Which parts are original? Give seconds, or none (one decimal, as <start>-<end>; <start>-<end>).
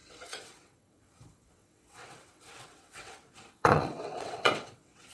none